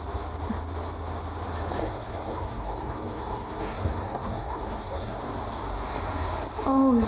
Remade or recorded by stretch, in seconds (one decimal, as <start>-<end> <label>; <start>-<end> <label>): 0.0-1.8 recorded; 1.8-5.2 remade; 5.2-7.1 recorded